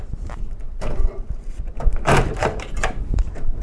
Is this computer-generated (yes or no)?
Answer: yes